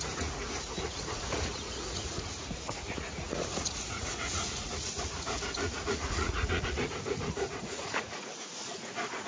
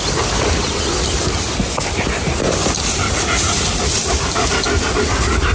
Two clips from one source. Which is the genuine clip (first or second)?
second